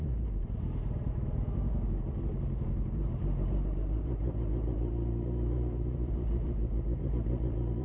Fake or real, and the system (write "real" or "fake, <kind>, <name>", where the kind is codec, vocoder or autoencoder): fake, vocoder, BigVGAN v2